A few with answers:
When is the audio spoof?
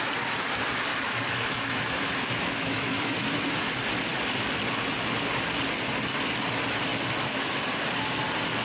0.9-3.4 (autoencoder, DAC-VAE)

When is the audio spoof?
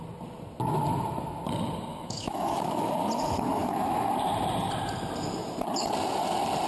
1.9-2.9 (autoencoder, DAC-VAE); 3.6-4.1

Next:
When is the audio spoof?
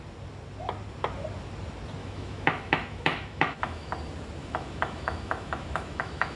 2.0-3.9 (autoencoder, DAC-VAE); 4.4-6.4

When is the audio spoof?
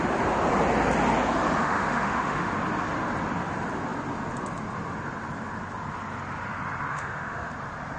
1.6-2.5 (autoencoder, DAC-VAE); 6.9-7.5